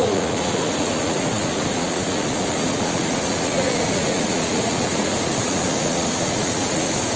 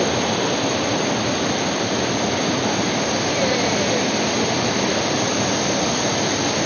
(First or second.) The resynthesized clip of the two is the first